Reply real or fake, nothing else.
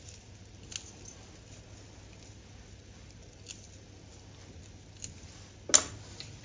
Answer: real